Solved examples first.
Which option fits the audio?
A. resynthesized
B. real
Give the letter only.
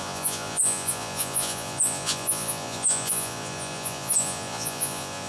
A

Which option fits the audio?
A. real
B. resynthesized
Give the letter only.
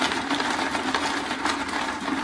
A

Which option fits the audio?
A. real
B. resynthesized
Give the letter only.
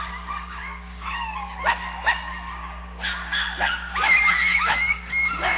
B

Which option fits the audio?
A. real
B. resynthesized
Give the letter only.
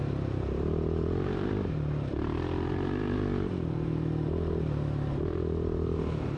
B